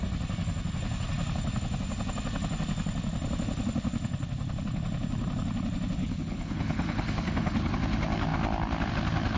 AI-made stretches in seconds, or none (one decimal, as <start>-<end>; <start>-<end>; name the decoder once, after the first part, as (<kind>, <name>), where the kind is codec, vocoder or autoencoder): 6.0-7.7 (codec, HILCodec)

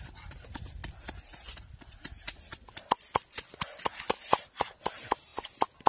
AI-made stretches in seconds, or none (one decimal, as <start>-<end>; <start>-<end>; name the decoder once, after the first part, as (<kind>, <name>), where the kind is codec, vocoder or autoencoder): none